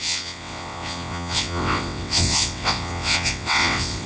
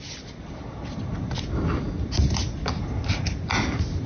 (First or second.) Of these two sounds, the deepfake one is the first